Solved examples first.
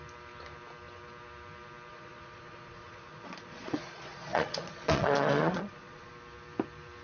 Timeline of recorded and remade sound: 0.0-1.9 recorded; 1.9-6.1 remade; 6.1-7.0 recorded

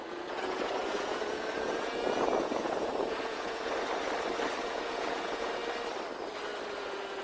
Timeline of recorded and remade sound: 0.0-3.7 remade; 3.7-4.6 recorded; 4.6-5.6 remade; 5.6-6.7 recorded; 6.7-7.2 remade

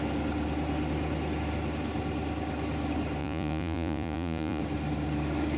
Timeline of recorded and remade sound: 0.0-3.2 recorded; 3.2-4.6 remade; 4.6-5.6 recorded

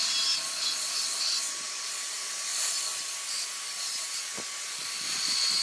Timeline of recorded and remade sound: 0.0-5.6 recorded

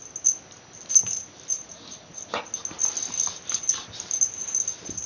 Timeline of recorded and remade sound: 0.0-1.5 recorded; 1.5-2.2 remade; 2.2-5.1 recorded

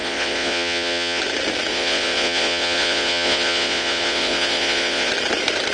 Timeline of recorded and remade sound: 0.0-1.2 remade; 1.2-1.7 recorded; 1.7-5.1 remade; 5.1-5.7 recorded

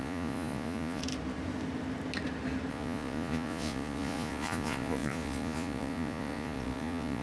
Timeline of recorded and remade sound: 0.0-1.0 remade; 1.0-2.7 recorded; 2.7-7.2 remade

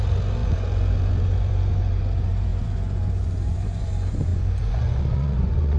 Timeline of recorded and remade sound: 0.0-5.8 remade